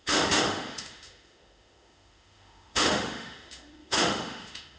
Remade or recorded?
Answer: remade